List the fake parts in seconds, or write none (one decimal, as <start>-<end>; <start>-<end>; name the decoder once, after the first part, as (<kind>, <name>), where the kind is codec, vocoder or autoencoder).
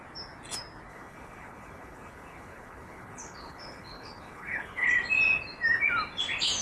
0.9-4.9 (codec, HILCodec)